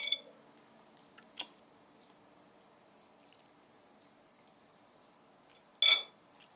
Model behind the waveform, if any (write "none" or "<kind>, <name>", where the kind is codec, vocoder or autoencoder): none